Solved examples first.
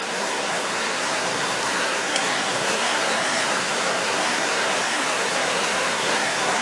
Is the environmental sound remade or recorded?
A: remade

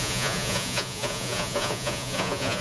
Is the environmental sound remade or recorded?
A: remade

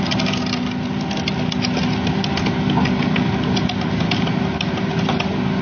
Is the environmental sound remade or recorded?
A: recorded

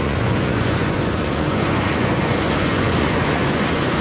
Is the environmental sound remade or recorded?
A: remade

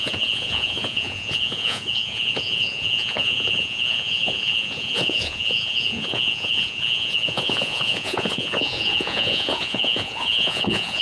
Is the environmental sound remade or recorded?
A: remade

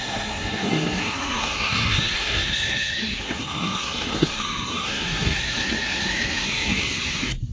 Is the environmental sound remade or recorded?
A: remade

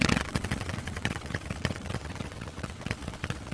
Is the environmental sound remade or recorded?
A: remade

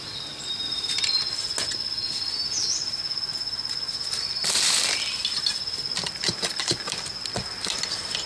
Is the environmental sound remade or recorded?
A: recorded